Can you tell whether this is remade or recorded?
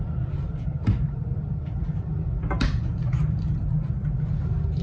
recorded